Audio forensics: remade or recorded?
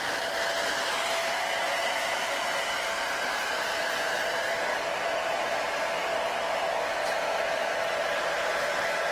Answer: recorded